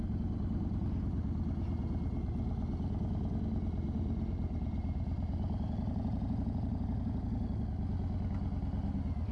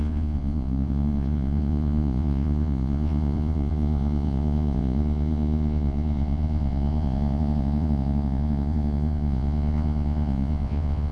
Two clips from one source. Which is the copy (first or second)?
second